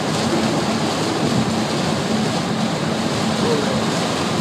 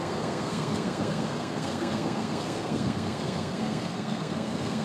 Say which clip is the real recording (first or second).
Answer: first